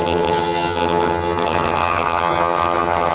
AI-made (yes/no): yes